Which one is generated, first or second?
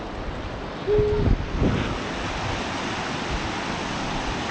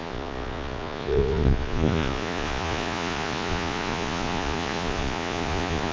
second